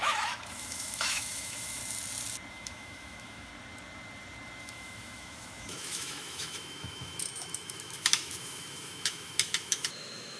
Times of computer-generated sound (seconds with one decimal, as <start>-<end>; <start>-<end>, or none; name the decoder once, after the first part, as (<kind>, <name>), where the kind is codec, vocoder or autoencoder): 0.0-1.8 (autoencoder, DAC-VAE); 2.5-3.5; 4.6-10.4